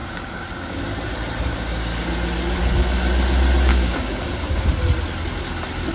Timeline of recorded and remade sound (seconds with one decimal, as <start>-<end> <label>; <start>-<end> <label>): 0.0-0.8 remade; 0.8-1.5 recorded; 1.5-2.1 remade; 2.1-3.7 recorded; 3.7-4.7 remade; 4.7-5.9 recorded